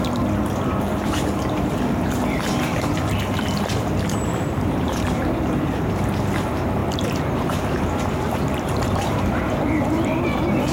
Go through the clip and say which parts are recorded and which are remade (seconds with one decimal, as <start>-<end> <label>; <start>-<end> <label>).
0.0-10.7 remade